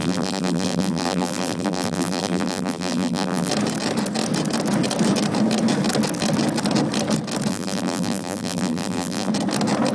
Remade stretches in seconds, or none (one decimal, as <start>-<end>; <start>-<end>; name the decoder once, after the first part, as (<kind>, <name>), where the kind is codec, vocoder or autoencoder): 0.0-3.5 (vocoder, BigVGAN v2); 7.5-9.3